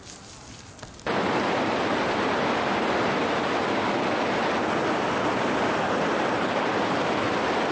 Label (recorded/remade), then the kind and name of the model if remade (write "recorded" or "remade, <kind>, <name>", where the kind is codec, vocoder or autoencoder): recorded